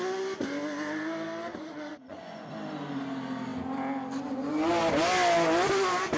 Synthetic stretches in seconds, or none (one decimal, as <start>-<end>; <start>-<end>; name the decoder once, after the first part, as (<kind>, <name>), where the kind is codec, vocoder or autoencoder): 1.5-2.5 (vocoder, Vocos)